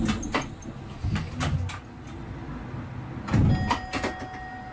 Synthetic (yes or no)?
no